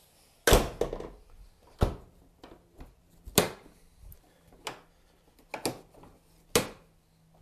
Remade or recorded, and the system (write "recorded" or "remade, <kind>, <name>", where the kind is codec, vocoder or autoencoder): recorded